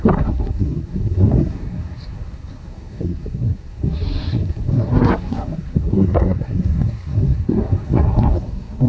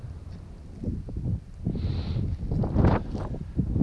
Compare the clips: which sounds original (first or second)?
second